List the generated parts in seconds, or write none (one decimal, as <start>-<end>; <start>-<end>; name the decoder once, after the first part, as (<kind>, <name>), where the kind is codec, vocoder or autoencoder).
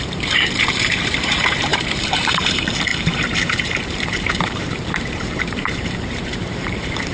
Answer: 0.0-7.1 (vocoder, BigVGAN v2)